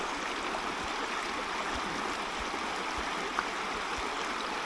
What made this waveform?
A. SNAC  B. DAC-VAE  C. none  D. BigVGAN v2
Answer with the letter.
C